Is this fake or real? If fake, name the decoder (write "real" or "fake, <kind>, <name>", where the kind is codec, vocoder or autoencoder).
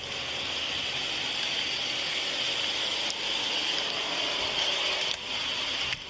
real